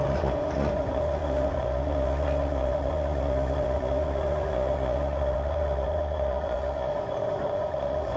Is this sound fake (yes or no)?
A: yes